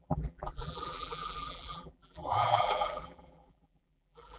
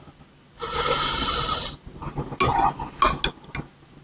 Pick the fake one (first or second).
first